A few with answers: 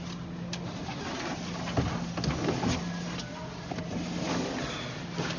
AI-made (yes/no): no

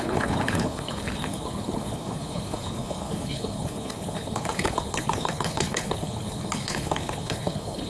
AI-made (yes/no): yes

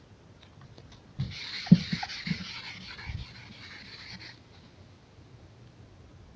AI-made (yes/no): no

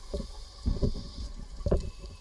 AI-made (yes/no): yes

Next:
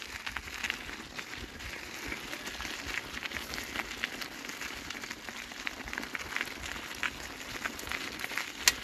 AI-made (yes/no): no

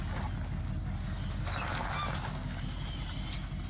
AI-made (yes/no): no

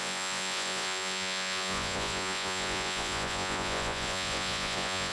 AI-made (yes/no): yes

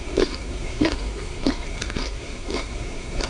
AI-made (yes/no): yes